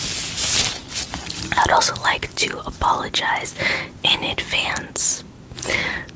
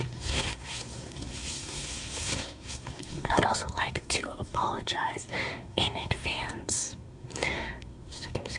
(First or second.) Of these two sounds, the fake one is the second